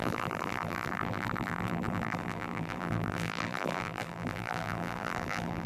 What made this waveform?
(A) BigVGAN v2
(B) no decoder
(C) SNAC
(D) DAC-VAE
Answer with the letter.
A